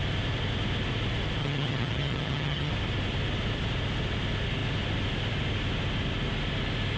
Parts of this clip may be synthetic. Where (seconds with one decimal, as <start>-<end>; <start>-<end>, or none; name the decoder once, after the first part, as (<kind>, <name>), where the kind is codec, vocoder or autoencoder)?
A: 1.4-2.7 (vocoder, HiFi-GAN)